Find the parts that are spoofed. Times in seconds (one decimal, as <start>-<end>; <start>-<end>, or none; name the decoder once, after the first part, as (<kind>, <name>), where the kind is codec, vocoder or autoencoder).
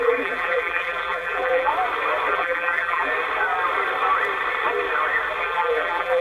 0.0-1.7 (vocoder, BigVGAN v2); 2.3-3.1; 5.4-6.2